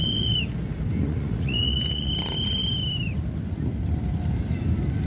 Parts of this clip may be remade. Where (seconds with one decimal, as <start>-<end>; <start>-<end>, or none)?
1.0-2.1